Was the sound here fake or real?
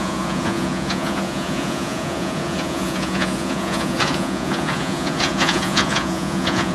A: fake